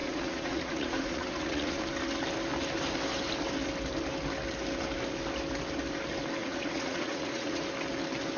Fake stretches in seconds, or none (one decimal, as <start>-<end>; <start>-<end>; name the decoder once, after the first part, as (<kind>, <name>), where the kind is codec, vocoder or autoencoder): 0.0-1.8 (vocoder, Vocos); 6.4-7.6